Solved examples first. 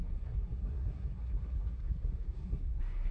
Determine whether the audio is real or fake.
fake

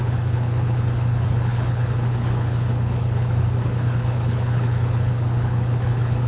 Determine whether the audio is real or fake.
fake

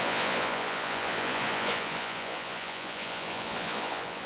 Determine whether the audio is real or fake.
fake